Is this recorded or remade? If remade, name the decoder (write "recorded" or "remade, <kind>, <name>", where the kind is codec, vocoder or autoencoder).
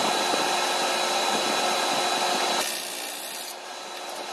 recorded